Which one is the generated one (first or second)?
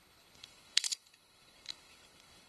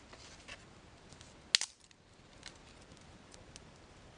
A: first